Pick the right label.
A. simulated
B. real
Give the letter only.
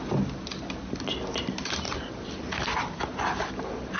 B